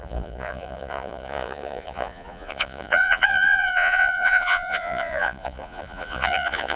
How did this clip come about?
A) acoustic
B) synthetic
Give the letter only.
B